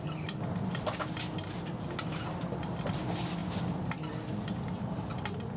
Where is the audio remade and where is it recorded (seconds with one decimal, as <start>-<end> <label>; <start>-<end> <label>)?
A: 0.0-5.6 recorded